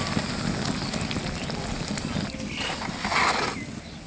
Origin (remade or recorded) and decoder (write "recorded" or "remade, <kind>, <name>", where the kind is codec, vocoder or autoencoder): recorded